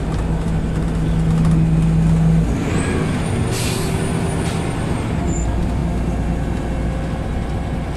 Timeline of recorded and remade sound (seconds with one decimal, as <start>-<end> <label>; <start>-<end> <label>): 0.0-8.0 recorded